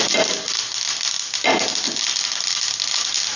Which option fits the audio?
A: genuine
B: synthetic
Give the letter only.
A